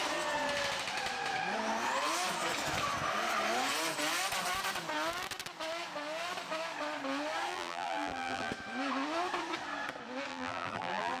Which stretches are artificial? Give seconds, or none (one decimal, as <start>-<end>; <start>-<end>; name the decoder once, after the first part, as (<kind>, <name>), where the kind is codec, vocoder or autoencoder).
7.5-8.5 (vocoder, BigVGAN v2); 10.3-11.2